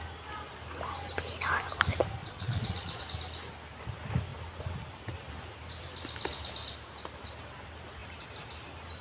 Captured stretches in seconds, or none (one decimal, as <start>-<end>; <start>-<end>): 0.0-2.2; 3.0-9.0